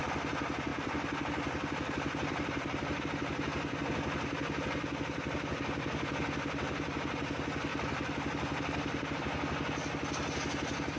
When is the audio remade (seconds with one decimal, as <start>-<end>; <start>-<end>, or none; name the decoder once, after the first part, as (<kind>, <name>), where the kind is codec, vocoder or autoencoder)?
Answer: 0.7-3.0 (vocoder, BigVGAN v2)